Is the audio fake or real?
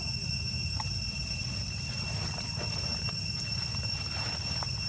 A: real